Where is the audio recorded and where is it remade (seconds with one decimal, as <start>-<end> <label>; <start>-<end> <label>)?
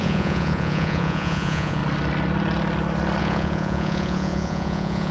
0.0-1.8 remade; 1.8-3.2 recorded; 3.2-5.1 remade